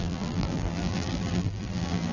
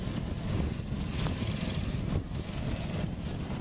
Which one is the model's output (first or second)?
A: first